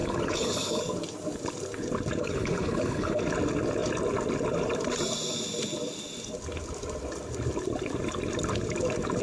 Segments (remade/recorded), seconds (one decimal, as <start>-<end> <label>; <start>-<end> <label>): 0.0-0.8 remade; 0.8-2.2 recorded; 2.2-3.2 remade; 3.2-9.2 recorded